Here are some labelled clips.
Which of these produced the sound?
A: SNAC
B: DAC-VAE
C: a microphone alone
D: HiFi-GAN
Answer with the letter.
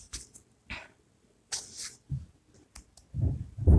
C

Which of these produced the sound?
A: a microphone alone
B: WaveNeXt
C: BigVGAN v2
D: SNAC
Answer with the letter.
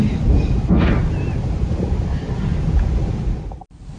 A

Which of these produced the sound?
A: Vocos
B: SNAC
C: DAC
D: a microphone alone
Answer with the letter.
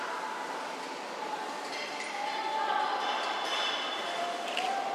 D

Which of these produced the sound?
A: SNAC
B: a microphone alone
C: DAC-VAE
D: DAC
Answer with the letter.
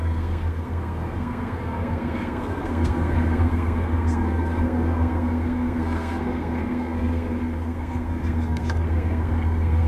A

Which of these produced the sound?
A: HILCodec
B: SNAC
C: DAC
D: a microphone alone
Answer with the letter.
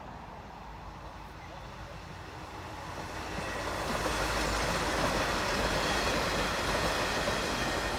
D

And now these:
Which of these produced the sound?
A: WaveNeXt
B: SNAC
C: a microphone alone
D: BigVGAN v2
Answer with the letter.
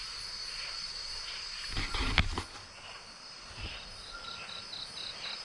C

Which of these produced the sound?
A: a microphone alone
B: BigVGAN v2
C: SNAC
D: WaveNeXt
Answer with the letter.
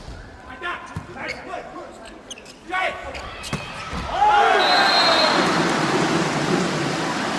A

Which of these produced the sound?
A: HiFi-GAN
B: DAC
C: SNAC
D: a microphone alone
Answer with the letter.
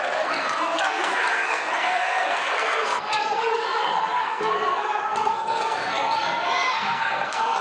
C